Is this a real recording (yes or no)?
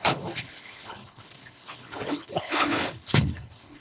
no